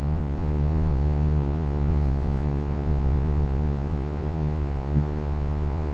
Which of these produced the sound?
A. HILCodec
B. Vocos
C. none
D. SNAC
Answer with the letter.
B